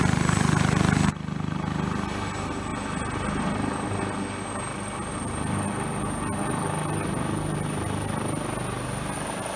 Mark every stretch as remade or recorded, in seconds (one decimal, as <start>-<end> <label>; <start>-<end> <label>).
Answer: 0.0-9.6 recorded